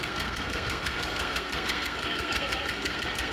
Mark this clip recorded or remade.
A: remade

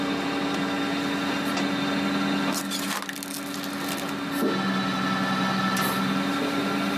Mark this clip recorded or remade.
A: recorded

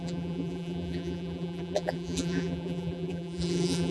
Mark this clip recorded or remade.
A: remade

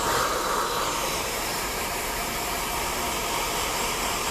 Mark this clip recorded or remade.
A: remade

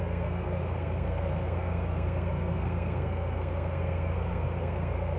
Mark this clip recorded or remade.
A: remade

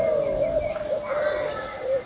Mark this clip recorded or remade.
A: recorded